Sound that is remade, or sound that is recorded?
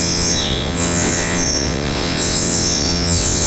remade